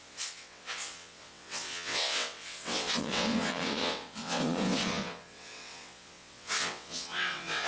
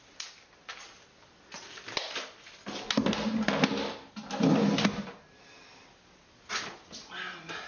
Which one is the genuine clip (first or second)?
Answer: second